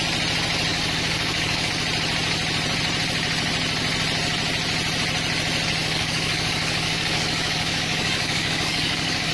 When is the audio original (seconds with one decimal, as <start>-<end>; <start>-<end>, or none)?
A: 0.0-0.7; 1.7-5.8